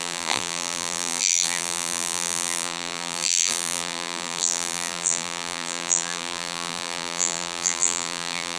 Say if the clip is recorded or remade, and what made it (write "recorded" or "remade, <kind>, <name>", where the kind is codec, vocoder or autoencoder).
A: remade, vocoder, BigVGAN v2